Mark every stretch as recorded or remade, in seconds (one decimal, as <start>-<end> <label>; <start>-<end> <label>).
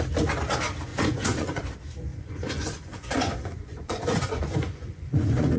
0.0-0.9 recorded; 0.9-1.6 remade; 1.6-2.1 recorded; 2.1-5.6 remade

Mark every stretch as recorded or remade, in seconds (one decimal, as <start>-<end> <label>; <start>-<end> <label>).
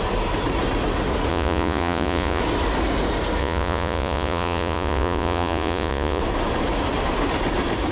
0.0-1.3 recorded; 1.3-2.4 remade; 2.4-3.4 recorded; 3.4-6.2 remade; 6.2-7.9 recorded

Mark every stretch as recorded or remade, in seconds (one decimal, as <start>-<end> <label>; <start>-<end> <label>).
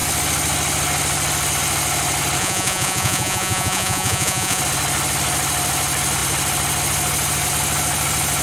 0.0-2.4 recorded; 2.4-4.6 remade; 4.6-8.4 recorded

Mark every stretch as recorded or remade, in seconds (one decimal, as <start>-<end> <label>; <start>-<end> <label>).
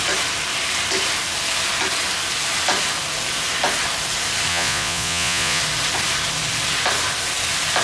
0.0-4.5 recorded; 4.5-5.6 remade; 5.6-7.8 recorded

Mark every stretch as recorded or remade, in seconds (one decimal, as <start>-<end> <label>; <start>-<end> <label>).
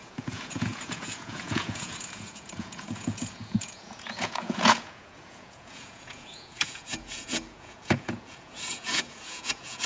0.0-9.9 remade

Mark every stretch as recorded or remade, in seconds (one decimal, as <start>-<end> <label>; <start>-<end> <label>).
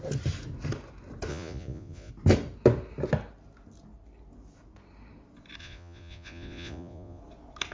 0.0-1.3 recorded; 1.3-2.1 remade; 2.1-5.6 recorded; 5.6-7.2 remade; 7.2-7.7 recorded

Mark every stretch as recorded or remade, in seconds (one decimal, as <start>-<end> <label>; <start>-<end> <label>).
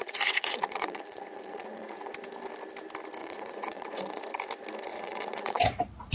0.0-2.1 remade; 2.1-3.2 recorded; 3.2-4.2 remade; 4.2-4.9 recorded; 4.9-6.1 remade